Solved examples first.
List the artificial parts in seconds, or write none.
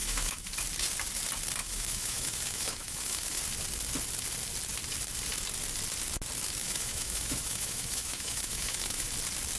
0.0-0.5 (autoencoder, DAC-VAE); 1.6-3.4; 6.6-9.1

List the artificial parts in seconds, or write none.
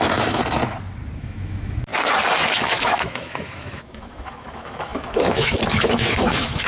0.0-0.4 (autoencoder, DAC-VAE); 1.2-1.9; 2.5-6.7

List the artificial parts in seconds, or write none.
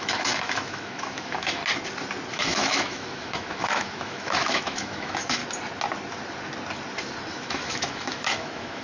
0.0-1.6 (autoencoder, DAC-VAE); 2.3-5.4; 7.3-8.8